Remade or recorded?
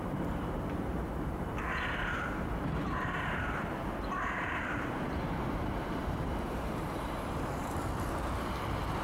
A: remade